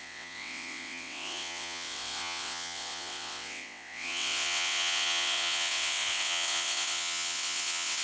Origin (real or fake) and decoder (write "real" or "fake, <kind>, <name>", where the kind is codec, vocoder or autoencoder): fake, vocoder, WaveNeXt